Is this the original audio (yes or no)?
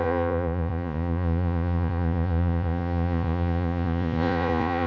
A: no